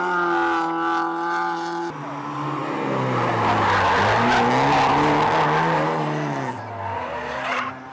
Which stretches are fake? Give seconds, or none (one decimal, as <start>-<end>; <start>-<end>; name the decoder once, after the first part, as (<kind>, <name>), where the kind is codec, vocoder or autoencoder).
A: none